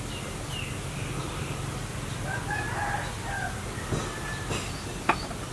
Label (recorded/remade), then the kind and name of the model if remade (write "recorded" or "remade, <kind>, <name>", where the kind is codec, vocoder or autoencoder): recorded